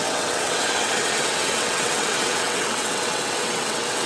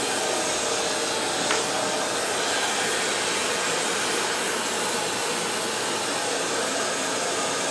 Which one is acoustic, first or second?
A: second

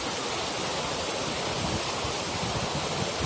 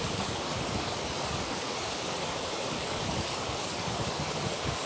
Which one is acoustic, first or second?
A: first